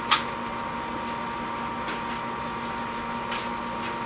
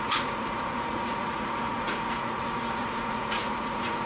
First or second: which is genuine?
first